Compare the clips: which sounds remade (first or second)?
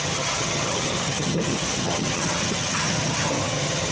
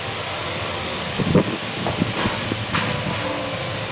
first